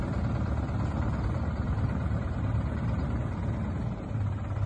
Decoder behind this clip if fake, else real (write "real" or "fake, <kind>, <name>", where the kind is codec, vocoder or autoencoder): fake, vocoder, BigVGAN v2